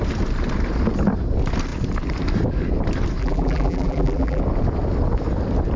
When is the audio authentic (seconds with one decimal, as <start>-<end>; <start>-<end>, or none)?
0.0-3.2; 4.4-5.8